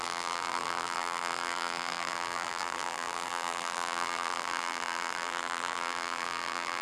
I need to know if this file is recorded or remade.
remade